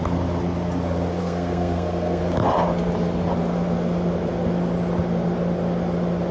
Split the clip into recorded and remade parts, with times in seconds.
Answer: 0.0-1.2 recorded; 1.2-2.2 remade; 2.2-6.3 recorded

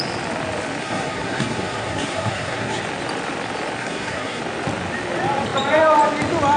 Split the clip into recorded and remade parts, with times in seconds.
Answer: 0.0-0.8 recorded; 0.8-2.8 remade; 2.8-3.8 recorded; 3.8-4.4 remade; 4.4-6.6 recorded

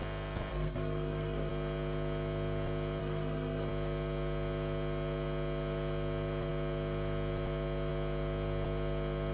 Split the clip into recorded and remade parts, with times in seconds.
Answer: 0.0-0.5 recorded; 0.5-1.5 remade; 1.5-3.0 recorded; 3.0-3.7 remade; 3.7-9.3 recorded

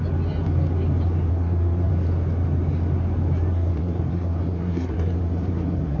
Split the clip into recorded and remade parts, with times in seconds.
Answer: 0.0-1.3 recorded; 1.3-1.9 remade; 1.9-3.5 recorded; 3.5-6.0 remade